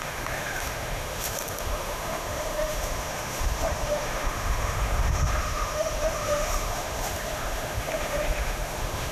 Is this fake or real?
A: fake